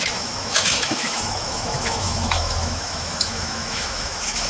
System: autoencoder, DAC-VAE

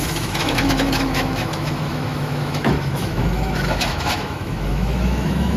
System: autoencoder, DAC-VAE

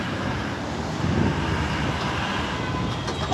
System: none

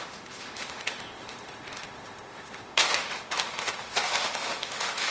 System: autoencoder, DAC-VAE